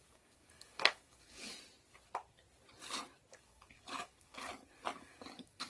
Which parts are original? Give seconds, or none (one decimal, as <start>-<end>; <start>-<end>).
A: 1.5-3.3; 4.5-5.0